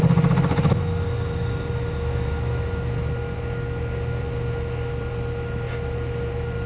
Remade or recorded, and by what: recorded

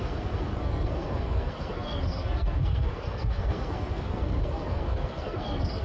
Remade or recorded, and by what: remade, codec, SNAC